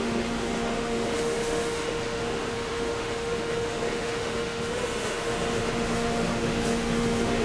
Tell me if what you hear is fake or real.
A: fake